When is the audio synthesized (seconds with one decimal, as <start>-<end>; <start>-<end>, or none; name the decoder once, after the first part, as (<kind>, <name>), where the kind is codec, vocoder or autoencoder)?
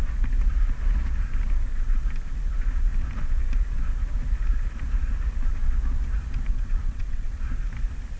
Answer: 6.5-7.4 (vocoder, WaveNeXt)